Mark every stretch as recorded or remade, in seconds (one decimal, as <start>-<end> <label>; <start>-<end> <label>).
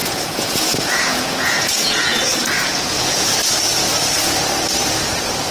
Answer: 0.0-3.3 remade; 3.3-5.5 recorded